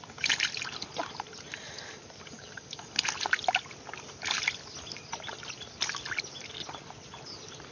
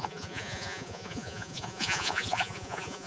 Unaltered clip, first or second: first